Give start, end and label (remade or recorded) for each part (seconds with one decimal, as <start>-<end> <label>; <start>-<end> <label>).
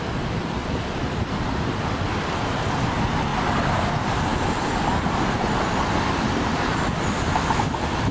0.0-8.1 recorded